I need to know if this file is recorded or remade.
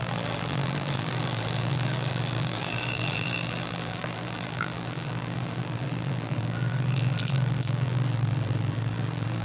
remade